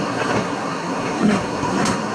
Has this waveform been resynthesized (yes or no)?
yes